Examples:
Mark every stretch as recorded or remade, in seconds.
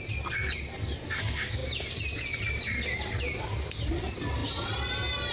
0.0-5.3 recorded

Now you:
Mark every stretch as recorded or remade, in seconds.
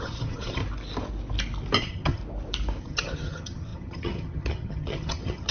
0.0-0.6 remade; 0.6-1.8 recorded; 1.8-2.2 remade; 2.2-2.8 recorded; 2.8-5.5 remade